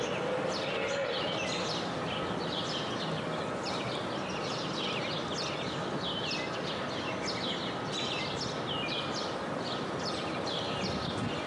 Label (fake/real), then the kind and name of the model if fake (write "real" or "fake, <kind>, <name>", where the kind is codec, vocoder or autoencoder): real